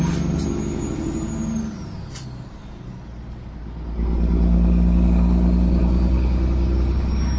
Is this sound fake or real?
real